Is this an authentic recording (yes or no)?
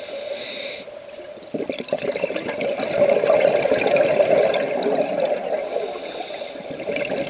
yes